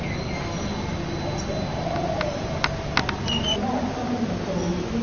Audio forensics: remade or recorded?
recorded